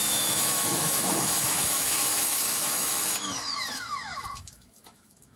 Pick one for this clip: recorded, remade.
remade